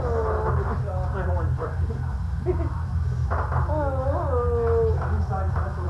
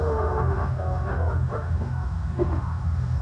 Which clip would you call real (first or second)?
first